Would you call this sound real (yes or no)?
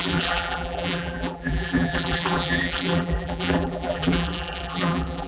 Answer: no